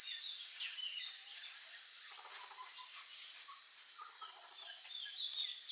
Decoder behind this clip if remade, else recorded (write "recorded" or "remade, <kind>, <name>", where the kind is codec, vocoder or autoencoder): recorded